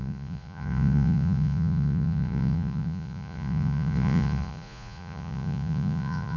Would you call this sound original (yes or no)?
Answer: no